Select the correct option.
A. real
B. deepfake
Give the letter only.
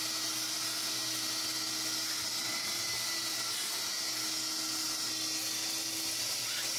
A